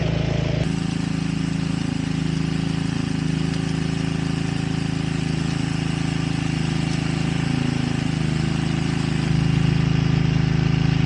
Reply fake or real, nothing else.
real